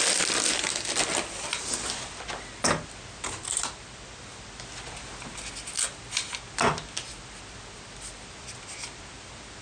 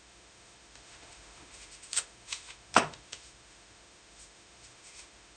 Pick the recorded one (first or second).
first